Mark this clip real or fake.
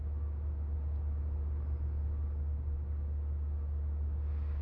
real